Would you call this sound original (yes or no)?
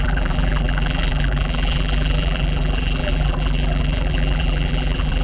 no